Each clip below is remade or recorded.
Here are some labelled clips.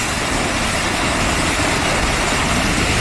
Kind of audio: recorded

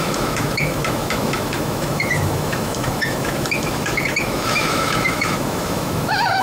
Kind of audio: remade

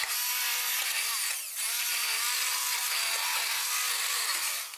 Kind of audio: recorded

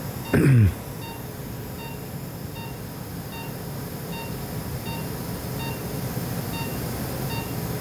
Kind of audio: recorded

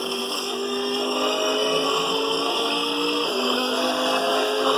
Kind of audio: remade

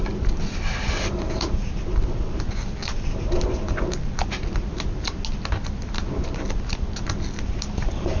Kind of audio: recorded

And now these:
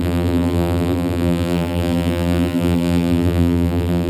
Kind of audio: remade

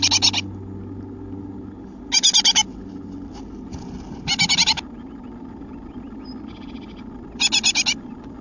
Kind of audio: recorded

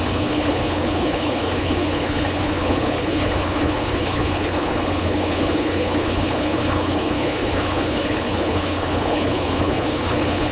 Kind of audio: remade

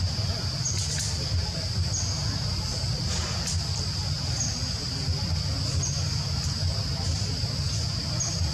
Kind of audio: recorded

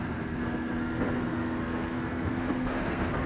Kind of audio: remade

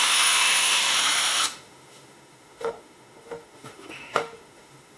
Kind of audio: remade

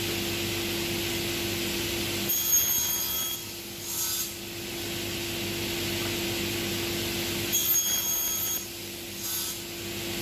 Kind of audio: recorded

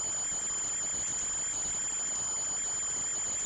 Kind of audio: recorded